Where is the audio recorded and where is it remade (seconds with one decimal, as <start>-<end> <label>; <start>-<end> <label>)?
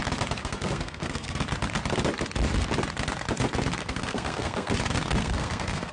0.0-0.4 recorded; 0.4-1.4 remade; 1.4-3.8 recorded; 3.8-4.7 remade; 4.7-5.2 recorded; 5.2-5.9 remade